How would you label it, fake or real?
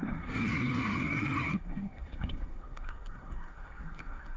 fake